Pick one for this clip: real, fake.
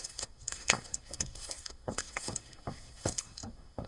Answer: fake